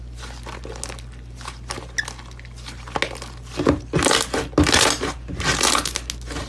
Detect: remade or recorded recorded